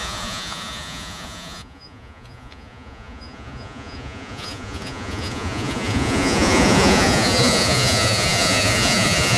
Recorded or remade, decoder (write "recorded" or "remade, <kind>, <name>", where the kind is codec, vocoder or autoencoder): remade, vocoder, Vocos